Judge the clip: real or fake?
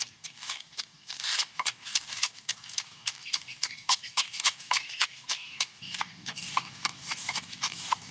fake